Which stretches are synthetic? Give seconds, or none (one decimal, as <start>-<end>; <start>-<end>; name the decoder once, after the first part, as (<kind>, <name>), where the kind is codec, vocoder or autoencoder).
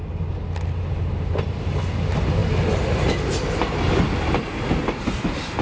none